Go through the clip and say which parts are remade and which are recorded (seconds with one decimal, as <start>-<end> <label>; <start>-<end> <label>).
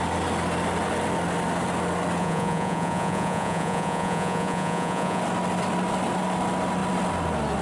0.0-2.2 recorded; 2.2-5.2 remade; 5.2-7.6 recorded